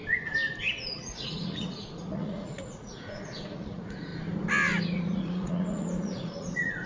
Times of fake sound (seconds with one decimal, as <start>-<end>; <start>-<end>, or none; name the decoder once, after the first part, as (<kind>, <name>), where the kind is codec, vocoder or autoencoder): 0.9-4.1 (vocoder, Vocos); 4.8-6.9